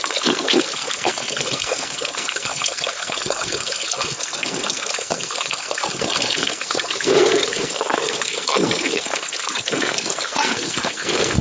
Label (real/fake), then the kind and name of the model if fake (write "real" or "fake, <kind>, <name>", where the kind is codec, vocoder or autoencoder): fake, codec, SNAC